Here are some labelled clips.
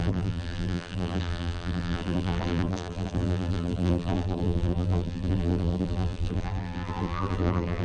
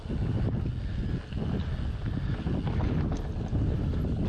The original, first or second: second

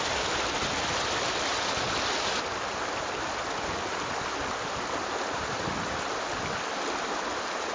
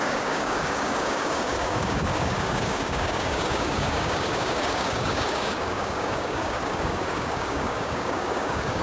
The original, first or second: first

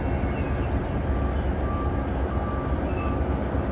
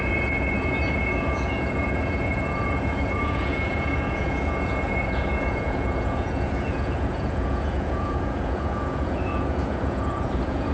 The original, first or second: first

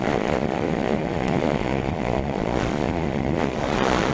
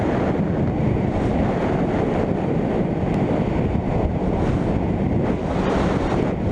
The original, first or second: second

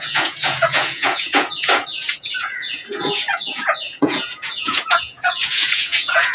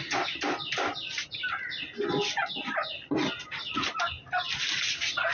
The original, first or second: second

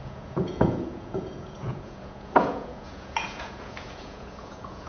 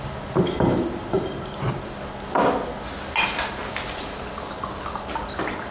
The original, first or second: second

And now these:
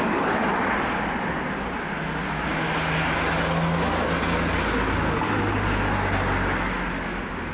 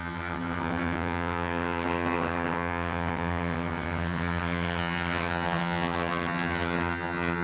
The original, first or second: first